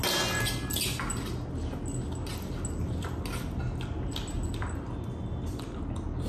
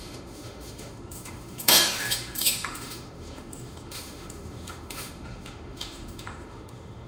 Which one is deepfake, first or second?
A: second